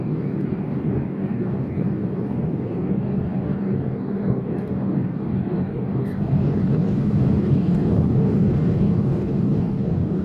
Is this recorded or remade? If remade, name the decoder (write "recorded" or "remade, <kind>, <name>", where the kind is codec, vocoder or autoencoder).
remade, codec, DAC